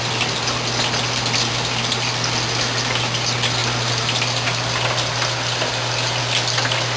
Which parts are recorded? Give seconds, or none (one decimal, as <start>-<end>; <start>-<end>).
0.0-7.0